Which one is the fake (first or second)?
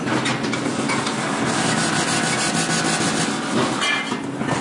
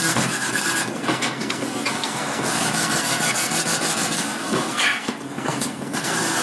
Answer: second